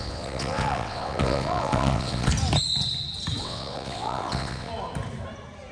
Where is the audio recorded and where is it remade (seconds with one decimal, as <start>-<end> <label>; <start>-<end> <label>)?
0.0-2.3 remade; 2.3-3.4 recorded; 3.4-4.7 remade; 4.7-5.7 recorded